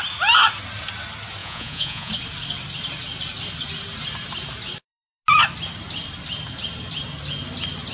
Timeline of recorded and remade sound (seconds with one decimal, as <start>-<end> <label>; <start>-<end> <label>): 0.0-1.4 recorded; 1.4-2.1 remade; 2.1-7.9 recorded